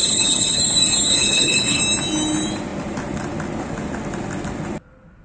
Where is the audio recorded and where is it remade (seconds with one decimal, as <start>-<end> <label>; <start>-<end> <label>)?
0.0-0.6 remade; 0.6-1.1 recorded; 1.1-1.8 remade; 1.8-5.2 recorded

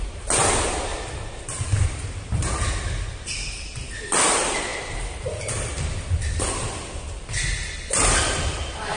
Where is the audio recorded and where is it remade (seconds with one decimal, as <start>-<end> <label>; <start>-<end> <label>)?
0.0-9.0 recorded

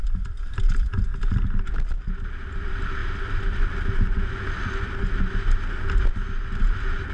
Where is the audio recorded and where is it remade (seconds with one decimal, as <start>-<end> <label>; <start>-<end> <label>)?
0.0-1.1 remade; 1.1-2.2 recorded; 2.2-3.0 remade; 3.0-6.0 recorded; 6.0-7.1 remade

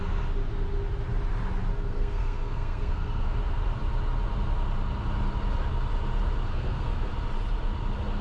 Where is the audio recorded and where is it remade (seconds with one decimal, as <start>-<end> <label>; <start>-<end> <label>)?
0.0-1.7 recorded; 1.7-3.3 remade; 3.3-6.5 recorded; 6.5-7.1 remade; 7.1-8.2 recorded

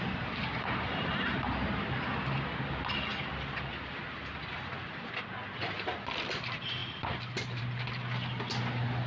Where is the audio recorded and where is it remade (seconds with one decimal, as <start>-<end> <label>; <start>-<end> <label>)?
0.0-9.1 recorded

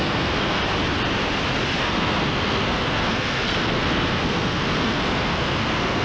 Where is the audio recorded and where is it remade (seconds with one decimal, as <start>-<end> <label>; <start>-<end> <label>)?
0.0-0.6 remade; 0.6-1.8 recorded; 1.8-6.0 remade

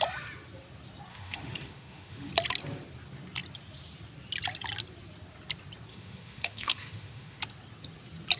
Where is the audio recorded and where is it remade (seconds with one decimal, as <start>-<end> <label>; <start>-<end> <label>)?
0.0-1.1 recorded; 1.1-2.3 remade; 2.3-5.9 recorded; 5.9-7.4 remade; 7.4-8.4 recorded

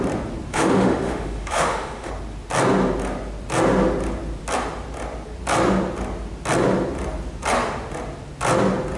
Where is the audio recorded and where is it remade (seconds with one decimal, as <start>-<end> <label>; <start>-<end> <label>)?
0.0-0.5 recorded; 0.5-2.1 remade; 2.1-9.0 recorded